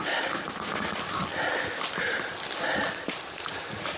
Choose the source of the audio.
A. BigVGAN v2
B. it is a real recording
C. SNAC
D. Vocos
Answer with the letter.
B